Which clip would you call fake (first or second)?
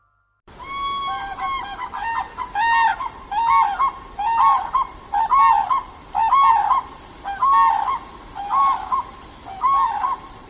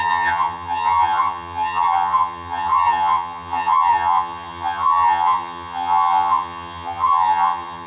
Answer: second